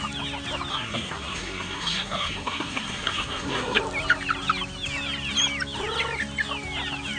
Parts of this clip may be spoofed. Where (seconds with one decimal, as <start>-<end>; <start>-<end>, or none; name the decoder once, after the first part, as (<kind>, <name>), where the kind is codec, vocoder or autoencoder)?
0.7-3.8 (codec, SNAC)